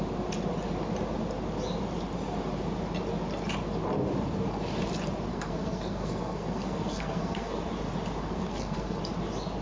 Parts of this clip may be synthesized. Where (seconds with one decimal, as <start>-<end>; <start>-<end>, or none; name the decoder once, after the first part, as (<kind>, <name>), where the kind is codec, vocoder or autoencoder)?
5.3-7.6 (codec, SNAC); 8.2-9.0

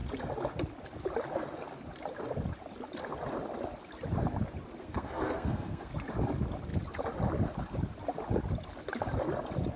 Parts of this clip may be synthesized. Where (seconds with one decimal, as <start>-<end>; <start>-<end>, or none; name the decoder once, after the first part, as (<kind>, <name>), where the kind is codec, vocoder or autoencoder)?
4.8-5.9 (codec, SNAC)

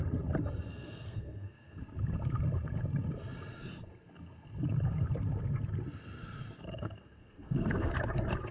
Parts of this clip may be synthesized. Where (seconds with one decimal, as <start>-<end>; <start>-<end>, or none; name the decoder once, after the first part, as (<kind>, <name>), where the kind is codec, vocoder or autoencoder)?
0.7-1.8 (codec, SNAC); 6.8-7.9

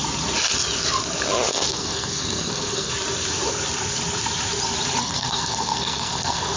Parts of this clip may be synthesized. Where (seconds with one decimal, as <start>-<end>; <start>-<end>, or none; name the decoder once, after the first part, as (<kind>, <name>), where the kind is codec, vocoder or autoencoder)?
1.5-2.9 (codec, SNAC); 5.0-6.6